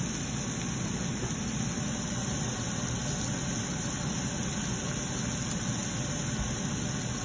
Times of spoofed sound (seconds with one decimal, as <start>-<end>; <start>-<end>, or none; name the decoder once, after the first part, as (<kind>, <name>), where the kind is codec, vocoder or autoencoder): none